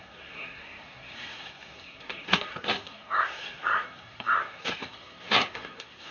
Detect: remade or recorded remade